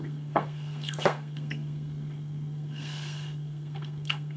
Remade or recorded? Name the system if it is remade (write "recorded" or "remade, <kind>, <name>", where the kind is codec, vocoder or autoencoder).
remade, codec, SNAC